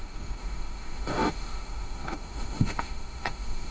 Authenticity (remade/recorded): remade